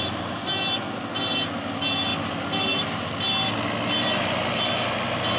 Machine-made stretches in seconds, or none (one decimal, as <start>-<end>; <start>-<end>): none